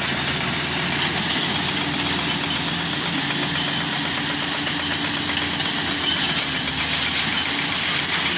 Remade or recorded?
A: recorded